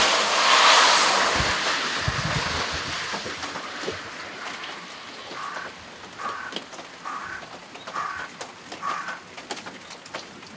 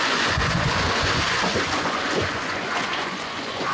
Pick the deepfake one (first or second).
second